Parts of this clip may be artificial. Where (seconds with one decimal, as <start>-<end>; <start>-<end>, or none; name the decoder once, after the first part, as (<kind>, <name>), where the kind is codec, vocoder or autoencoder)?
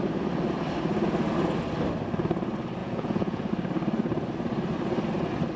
2.8-3.5 (vocoder, Vocos)